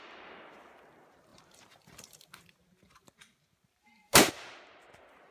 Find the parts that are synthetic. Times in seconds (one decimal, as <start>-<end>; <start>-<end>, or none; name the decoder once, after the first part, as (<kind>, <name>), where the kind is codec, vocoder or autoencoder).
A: 1.3-4.3 (vocoder, BigVGAN v2)